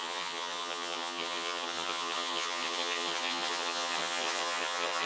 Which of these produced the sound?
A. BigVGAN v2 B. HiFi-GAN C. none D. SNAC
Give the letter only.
B